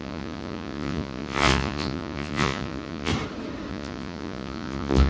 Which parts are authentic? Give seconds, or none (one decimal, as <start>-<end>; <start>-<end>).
3.1-3.7